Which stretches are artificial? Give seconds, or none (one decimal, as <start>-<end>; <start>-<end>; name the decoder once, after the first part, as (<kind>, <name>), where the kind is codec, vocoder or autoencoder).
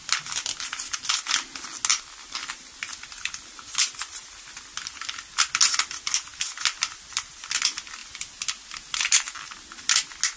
none